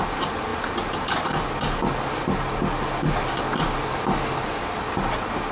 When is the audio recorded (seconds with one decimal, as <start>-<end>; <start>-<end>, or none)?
0.0-5.5